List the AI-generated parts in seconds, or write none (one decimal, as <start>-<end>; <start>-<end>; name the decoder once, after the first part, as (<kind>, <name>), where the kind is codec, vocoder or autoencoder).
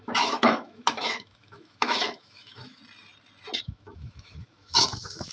0.0-2.8 (autoencoder, DAC-VAE); 3.6-5.3